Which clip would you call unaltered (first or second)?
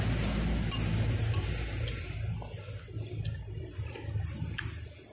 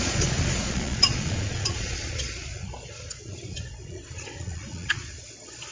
first